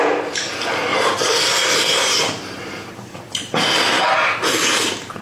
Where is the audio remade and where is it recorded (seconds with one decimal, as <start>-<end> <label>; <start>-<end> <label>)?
0.0-0.9 recorded; 0.9-4.0 remade; 4.0-5.2 recorded